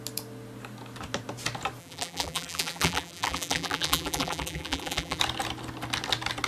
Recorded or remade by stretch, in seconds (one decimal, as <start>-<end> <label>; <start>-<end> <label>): 0.0-1.8 recorded; 1.8-5.2 remade; 5.2-6.5 recorded